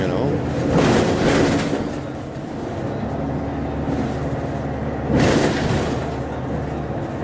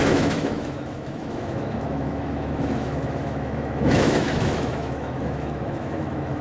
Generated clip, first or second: second